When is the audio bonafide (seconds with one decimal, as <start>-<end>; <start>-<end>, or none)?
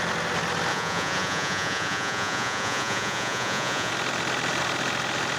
0.0-0.7; 3.9-5.4